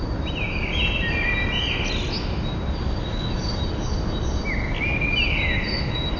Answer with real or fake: real